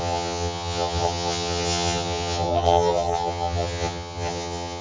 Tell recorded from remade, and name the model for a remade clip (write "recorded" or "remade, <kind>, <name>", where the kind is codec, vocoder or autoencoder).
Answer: remade, vocoder, HiFi-GAN